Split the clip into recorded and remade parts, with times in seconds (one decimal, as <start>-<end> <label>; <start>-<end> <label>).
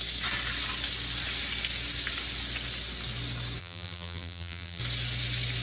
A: 0.0-3.6 recorded; 3.6-4.8 remade; 4.8-5.6 recorded